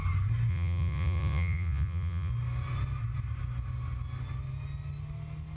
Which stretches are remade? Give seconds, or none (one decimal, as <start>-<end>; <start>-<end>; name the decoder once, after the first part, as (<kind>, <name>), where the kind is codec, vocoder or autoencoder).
0.5-2.3 (vocoder, Vocos)